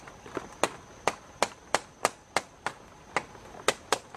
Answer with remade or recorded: recorded